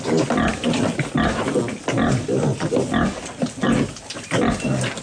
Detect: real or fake real